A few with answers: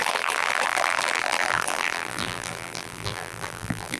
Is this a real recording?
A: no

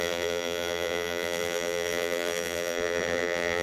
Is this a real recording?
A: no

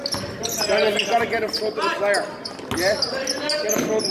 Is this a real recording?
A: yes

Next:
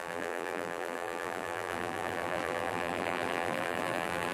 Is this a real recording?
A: no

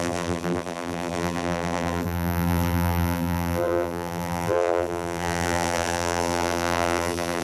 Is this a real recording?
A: no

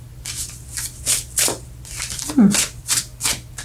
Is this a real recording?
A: yes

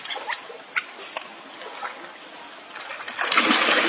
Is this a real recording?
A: yes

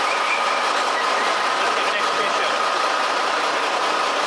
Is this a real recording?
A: yes